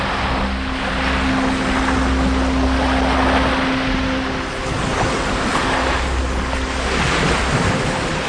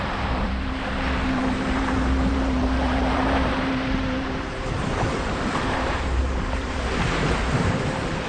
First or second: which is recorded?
first